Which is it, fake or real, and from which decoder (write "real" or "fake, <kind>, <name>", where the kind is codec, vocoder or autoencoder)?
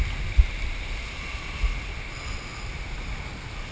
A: real